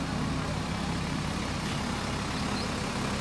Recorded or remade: recorded